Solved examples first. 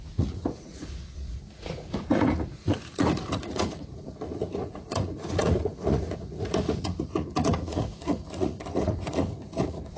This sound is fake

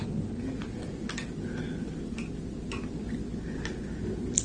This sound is real